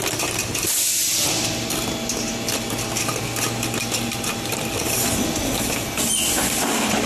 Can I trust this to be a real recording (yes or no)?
yes